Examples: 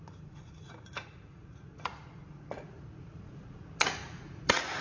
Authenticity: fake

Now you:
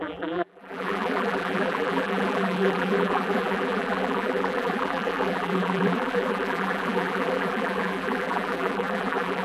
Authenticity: fake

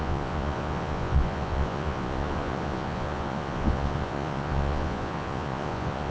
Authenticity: fake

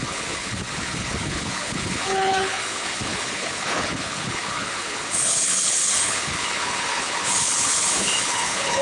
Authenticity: fake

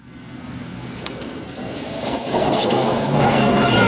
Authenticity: fake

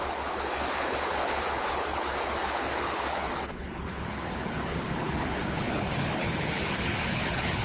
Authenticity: fake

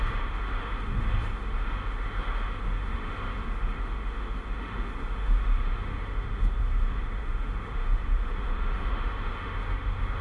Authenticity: fake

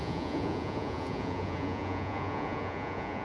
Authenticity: fake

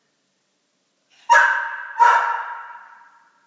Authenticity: real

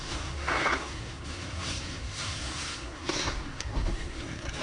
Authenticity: fake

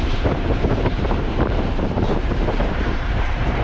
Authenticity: fake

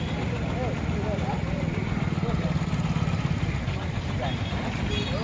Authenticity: real